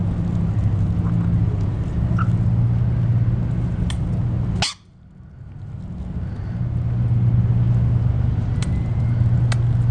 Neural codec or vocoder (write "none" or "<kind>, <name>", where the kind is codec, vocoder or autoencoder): none